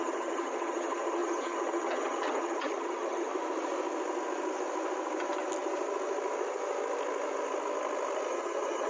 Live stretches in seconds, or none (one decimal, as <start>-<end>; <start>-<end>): 3.3-8.3